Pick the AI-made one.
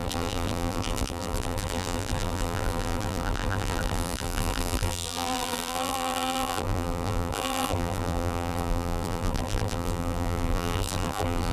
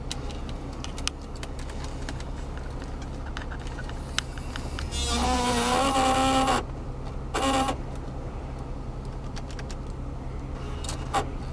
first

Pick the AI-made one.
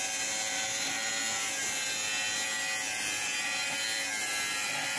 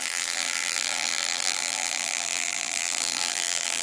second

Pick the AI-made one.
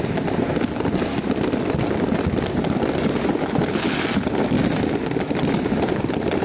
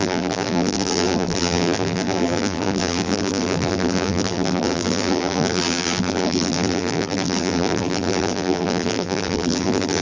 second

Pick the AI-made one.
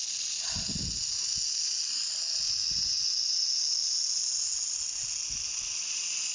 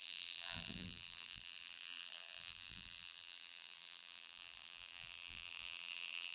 second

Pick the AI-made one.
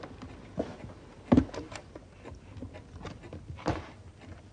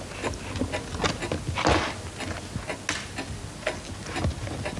first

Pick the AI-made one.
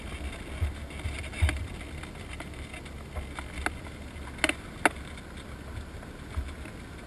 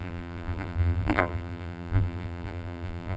second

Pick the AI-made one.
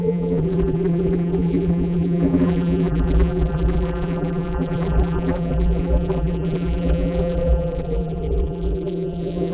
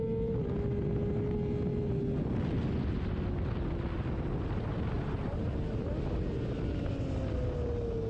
first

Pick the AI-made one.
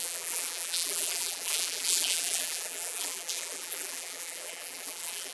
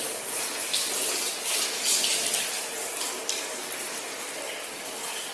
first